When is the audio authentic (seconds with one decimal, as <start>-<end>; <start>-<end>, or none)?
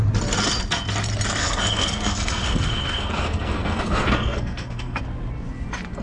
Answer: 0.0-1.4; 5.0-6.0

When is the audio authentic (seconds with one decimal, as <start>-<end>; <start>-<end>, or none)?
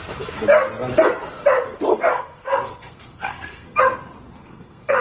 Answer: 0.0-1.9; 3.8-4.3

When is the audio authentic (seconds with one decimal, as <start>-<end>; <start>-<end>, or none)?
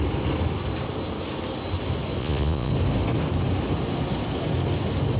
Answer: 0.0-2.2; 2.7-5.2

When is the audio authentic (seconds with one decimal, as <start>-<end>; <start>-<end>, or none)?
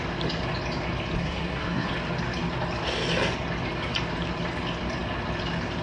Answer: 0.0-1.2; 1.9-5.8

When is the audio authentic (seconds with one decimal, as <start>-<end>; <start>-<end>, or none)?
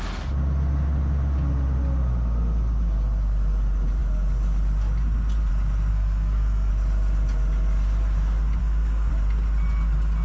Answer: 0.0-5.9; 6.7-8.6; 9.1-10.2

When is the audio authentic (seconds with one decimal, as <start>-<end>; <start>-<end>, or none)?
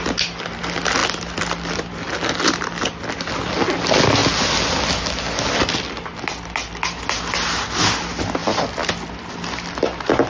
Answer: 0.0-10.3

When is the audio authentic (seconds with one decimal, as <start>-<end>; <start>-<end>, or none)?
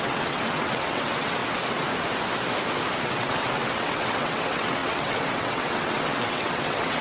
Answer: 1.4-3.0